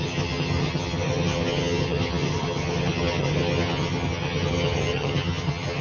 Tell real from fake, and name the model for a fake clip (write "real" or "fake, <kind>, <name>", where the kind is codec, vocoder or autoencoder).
fake, vocoder, HiFi-GAN